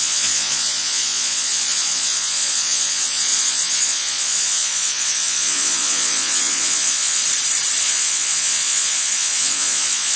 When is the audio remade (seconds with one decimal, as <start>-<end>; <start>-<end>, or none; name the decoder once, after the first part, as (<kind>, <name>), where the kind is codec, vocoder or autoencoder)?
0.0-7.2 (vocoder, Vocos); 7.8-10.2

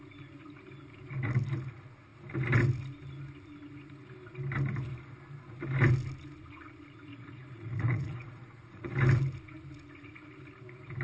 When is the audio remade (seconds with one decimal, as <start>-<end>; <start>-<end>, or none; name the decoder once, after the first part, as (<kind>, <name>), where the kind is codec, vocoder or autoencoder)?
7.1-8.9 (vocoder, Vocos)

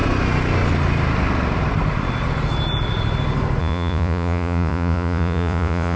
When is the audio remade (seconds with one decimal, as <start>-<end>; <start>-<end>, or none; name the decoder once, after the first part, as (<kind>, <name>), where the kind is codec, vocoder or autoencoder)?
3.6-6.0 (vocoder, Vocos)